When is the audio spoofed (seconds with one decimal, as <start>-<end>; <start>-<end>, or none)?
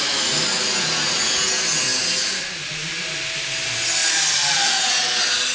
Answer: 4.0-4.7